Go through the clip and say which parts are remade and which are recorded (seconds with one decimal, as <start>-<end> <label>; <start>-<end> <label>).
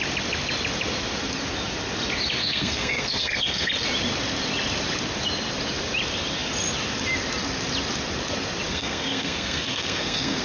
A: 0.0-2.4 recorded; 2.4-3.7 remade; 3.7-8.7 recorded; 8.7-10.4 remade